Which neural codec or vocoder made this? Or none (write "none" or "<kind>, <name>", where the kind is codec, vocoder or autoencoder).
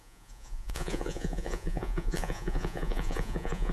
vocoder, Vocos